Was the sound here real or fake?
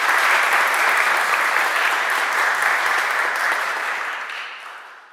fake